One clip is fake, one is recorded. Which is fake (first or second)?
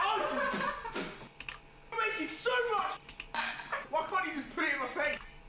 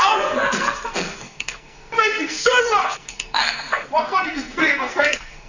second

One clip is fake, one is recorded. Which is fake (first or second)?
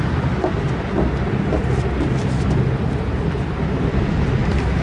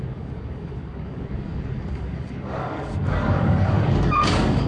second